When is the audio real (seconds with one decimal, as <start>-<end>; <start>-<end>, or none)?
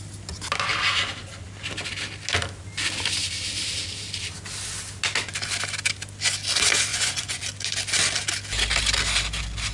0.0-6.9; 7.4-9.7